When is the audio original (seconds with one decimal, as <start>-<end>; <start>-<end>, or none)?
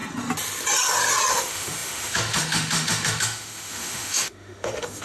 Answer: 0.0-1.3